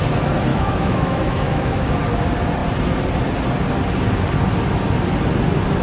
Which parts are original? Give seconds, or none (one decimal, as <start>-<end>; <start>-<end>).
0.0-0.5; 1.9-5.8